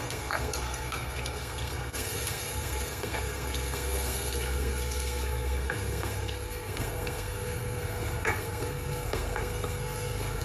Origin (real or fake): fake